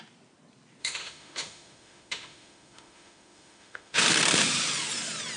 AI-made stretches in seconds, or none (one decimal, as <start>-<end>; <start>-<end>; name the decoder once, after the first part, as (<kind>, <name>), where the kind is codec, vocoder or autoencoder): 0.8-4.0 (autoencoder, DAC-VAE)